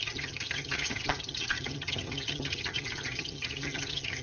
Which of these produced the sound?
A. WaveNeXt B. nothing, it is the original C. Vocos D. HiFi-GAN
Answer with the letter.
D